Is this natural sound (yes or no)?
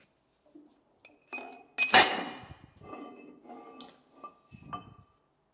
yes